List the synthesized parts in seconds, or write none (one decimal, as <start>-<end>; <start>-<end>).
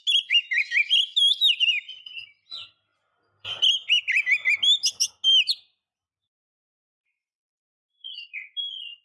none